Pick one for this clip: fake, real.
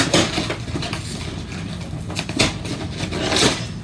real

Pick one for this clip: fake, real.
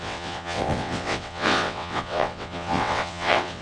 fake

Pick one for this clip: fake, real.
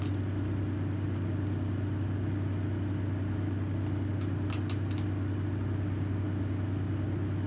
real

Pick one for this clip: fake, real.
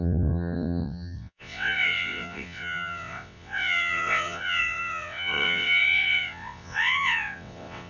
fake